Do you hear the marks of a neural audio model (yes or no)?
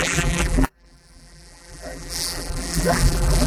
yes